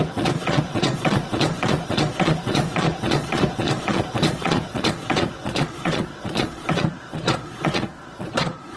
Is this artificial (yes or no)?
yes